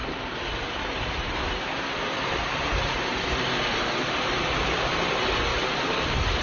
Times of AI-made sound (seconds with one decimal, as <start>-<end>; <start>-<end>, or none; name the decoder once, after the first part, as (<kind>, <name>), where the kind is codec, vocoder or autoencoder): 0.0-5.5 (vocoder, BigVGAN v2)